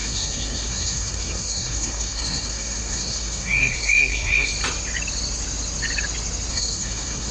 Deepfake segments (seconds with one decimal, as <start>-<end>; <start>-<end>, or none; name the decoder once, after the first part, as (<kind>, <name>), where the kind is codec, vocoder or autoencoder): 0.0-4.5 (codec, SNAC); 6.5-7.3